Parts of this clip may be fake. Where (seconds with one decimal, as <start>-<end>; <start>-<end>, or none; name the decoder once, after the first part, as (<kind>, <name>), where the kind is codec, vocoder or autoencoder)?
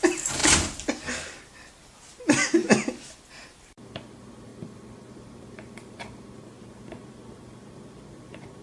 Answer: 0.0-0.4 (vocoder, BigVGAN v2); 3.3-8.6